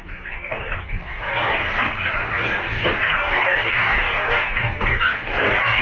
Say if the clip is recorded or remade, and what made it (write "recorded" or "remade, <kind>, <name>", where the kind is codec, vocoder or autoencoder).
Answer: remade, codec, DAC